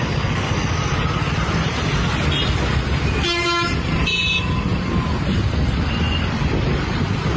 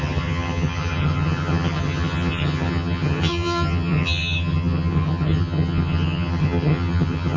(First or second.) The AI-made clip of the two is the second